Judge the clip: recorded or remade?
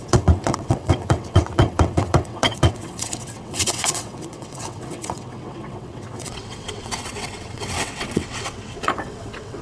remade